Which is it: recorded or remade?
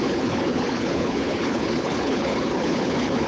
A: remade